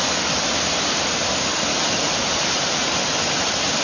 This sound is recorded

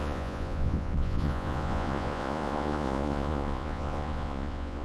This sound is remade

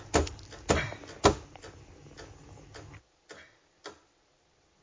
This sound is recorded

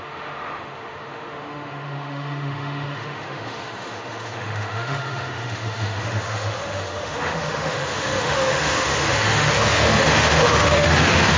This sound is remade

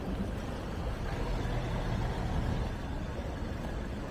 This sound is recorded